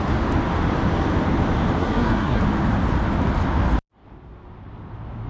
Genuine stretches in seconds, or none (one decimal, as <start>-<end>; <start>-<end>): 0.0-1.8; 2.4-5.3